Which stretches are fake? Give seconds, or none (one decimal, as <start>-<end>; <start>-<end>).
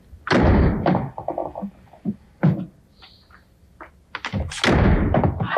none